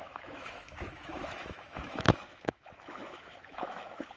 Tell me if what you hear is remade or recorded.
remade